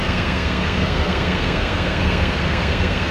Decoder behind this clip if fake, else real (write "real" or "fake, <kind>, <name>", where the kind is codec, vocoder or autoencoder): fake, codec, SNAC